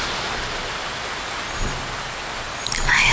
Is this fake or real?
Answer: real